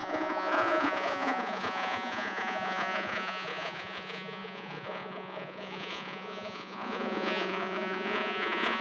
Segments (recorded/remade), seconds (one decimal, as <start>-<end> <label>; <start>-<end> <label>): 0.0-8.8 remade